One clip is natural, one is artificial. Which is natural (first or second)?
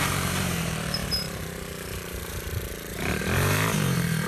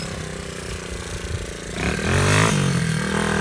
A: second